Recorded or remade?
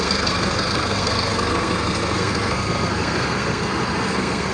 remade